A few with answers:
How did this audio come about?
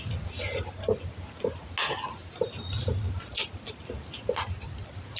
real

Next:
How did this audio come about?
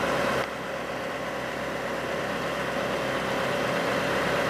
real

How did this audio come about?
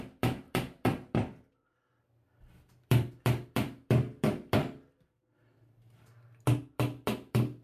fake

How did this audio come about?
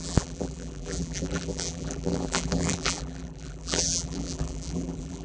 fake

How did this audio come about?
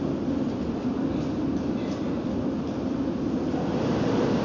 real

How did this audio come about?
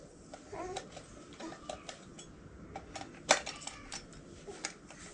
real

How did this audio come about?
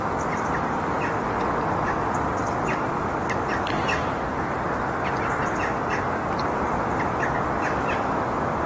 real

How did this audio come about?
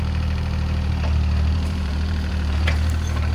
fake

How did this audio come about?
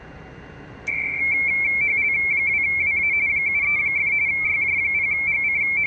real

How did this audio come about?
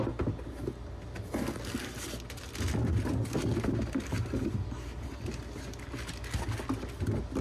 real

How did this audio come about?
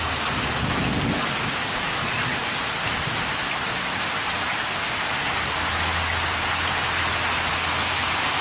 real